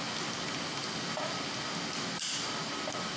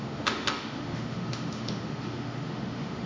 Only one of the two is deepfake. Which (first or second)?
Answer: second